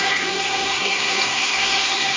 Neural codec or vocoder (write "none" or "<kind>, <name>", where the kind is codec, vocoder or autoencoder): codec, SNAC